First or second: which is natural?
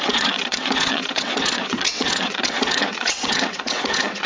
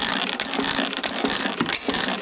second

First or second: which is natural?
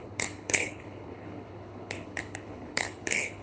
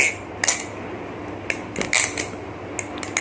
second